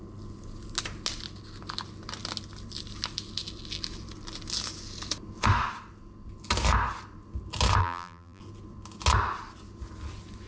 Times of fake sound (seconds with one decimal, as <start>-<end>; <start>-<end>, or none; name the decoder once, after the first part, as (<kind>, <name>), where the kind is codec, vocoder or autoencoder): 7.8-8.4 (vocoder, BigVGAN v2)